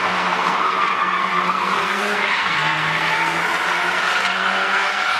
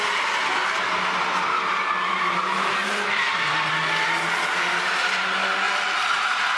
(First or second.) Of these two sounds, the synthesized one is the first